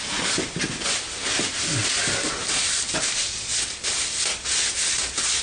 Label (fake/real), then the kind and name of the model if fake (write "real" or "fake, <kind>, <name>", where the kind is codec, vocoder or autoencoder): real